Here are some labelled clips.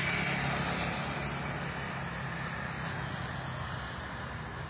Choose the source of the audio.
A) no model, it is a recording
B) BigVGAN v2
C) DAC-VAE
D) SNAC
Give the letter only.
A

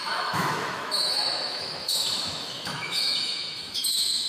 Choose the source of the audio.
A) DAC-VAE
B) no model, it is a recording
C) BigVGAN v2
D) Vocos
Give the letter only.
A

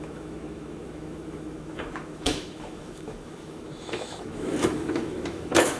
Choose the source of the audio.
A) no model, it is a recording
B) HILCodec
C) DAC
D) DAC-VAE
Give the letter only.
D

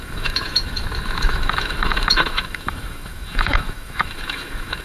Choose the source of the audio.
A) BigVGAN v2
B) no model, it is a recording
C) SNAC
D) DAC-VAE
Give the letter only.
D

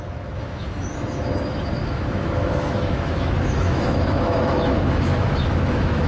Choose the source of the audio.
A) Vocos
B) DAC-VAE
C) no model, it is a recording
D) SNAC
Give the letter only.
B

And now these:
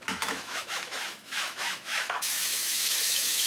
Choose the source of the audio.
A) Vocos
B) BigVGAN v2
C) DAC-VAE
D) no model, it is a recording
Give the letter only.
C